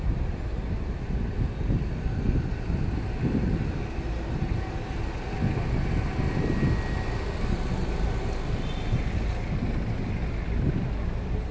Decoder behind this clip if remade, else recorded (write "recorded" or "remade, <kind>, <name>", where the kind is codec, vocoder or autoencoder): recorded